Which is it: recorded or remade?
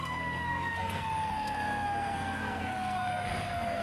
remade